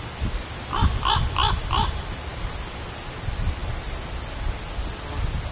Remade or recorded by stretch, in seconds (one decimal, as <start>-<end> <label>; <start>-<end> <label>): 0.0-5.5 recorded